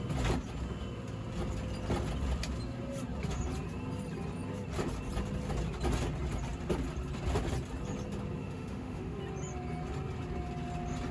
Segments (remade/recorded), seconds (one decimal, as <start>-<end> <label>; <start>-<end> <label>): 0.0-8.4 recorded; 8.4-9.2 remade; 9.2-11.1 recorded